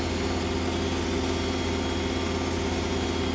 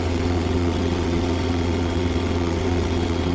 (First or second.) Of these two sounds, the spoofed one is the second